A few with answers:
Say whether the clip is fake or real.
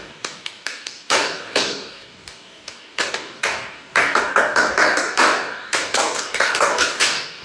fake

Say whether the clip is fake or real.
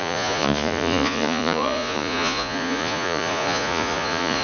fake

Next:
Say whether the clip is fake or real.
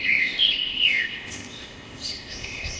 fake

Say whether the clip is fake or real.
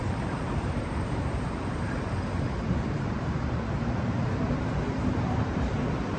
fake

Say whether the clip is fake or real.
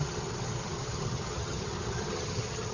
fake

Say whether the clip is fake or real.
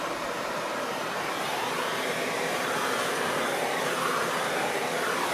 fake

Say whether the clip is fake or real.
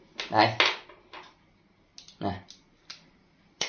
real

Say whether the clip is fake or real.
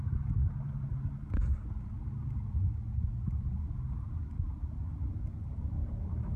real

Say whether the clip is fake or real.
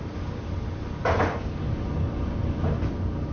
real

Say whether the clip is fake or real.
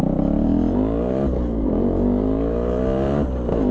real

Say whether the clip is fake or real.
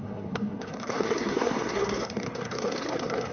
fake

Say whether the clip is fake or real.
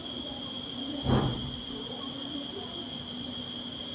real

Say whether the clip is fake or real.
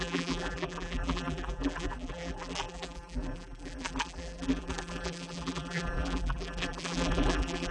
fake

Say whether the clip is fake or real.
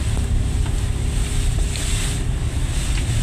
fake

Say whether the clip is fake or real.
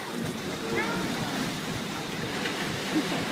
fake